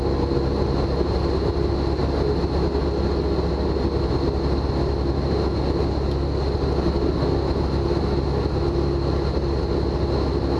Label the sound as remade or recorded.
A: recorded